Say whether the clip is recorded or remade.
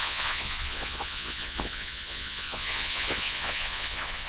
remade